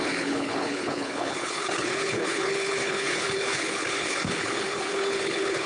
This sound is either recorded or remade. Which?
remade